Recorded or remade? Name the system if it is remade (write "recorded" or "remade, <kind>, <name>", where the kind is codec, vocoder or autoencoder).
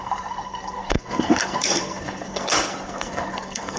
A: remade, codec, SNAC